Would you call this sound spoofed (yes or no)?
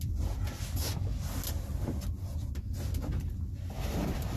no